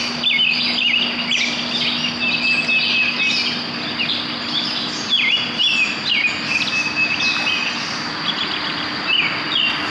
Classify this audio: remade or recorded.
recorded